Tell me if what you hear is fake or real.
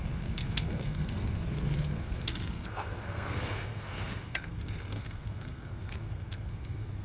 fake